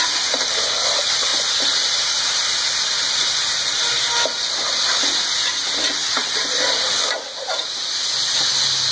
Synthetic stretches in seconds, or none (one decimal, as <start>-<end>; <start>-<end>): none